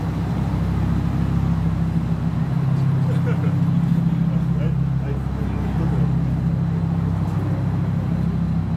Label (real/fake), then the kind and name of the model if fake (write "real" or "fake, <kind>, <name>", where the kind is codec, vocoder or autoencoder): real